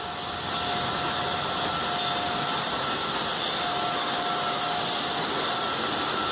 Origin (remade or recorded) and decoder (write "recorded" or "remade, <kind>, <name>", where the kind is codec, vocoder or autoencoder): recorded